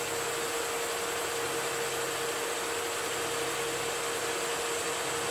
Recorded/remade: recorded